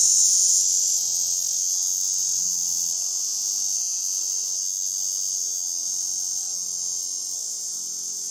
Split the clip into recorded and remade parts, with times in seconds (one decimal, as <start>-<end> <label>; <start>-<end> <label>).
0.0-8.3 recorded